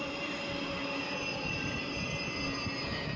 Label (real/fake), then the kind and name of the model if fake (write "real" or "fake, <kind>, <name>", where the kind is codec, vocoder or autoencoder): real